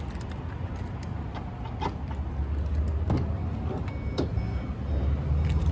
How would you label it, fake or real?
real